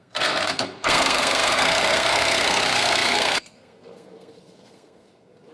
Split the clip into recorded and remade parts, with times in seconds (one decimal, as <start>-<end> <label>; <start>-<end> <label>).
0.0-5.5 remade